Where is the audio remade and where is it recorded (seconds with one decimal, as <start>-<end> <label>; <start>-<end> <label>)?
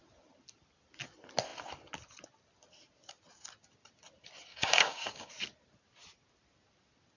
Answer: 0.0-4.5 recorded; 4.5-5.3 remade; 5.3-7.2 recorded